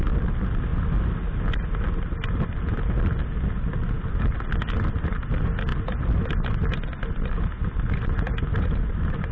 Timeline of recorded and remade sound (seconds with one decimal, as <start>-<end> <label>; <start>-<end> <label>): 0.0-9.3 recorded